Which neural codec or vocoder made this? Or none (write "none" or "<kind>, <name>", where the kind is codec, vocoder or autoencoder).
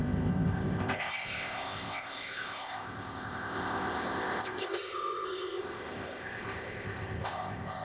codec, ZipCodec